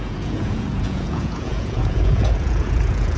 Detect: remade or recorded remade